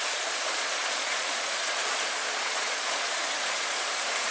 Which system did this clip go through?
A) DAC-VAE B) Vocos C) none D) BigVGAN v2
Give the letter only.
B